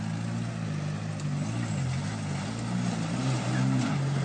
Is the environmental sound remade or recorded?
recorded